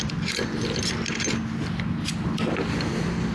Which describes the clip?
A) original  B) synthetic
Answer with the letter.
A